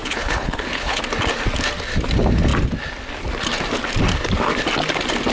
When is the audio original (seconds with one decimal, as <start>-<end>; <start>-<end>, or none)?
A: 1.0-5.3